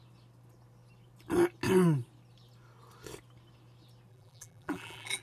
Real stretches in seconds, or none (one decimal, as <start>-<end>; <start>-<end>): 0.0-4.1